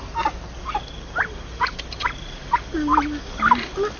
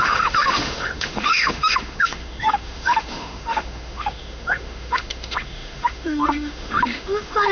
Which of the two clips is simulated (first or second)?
second